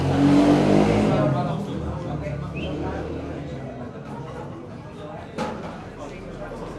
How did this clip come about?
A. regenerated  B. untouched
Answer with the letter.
B